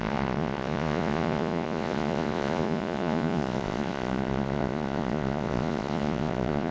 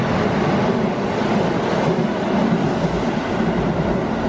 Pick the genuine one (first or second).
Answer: second